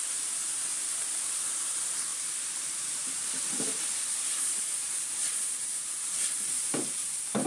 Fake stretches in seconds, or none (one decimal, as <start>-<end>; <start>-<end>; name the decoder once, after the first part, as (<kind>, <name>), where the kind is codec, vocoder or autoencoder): 0.0-0.4 (vocoder, BigVGAN v2); 1.0-7.5